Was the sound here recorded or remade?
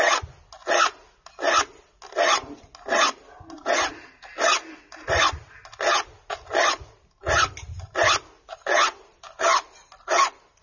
recorded